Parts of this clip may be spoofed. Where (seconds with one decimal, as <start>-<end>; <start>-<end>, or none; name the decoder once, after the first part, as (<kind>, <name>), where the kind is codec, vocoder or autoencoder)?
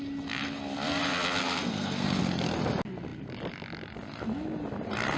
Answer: 1.4-2.2 (codec, SNAC)